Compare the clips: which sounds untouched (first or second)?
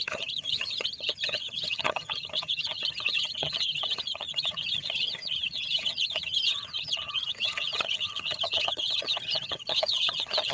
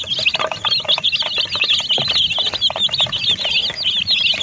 second